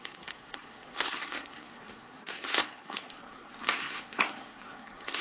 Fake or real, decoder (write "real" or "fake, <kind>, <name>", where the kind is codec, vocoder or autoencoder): fake, codec, SNAC